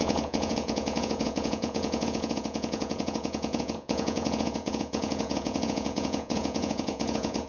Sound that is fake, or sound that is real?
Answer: fake